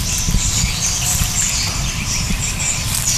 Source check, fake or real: fake